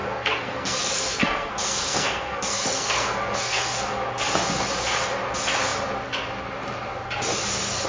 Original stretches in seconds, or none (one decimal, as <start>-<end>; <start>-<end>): 3.8-7.9